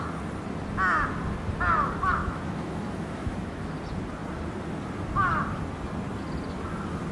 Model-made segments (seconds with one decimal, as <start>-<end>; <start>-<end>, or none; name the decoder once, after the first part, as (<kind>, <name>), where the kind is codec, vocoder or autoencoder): 2.2-3.7 (autoencoder, DAC-VAE)